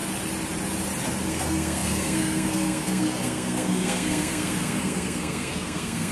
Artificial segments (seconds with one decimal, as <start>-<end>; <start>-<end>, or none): 1.3-6.1